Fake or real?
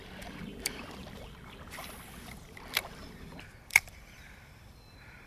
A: fake